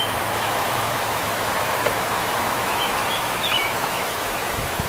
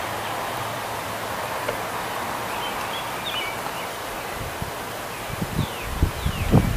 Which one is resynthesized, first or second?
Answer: first